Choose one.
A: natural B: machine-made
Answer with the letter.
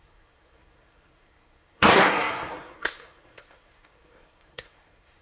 B